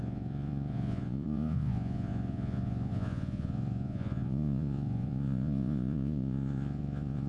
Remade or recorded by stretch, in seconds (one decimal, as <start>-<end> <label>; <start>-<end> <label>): 0.0-7.3 remade